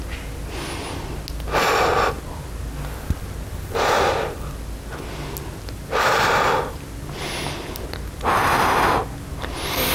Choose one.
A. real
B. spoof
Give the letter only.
A